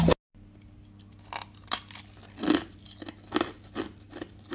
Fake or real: real